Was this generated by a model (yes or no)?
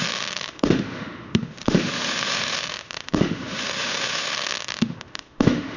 yes